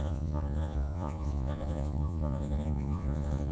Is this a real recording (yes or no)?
no